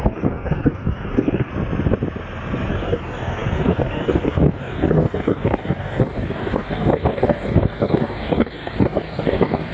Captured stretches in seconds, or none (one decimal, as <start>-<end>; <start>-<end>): 1.5-2.7